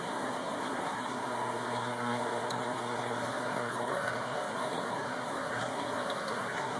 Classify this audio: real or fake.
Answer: fake